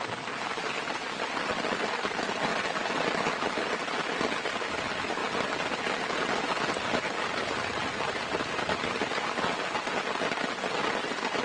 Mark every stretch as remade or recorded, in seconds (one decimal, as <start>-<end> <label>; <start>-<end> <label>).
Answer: 0.0-11.4 recorded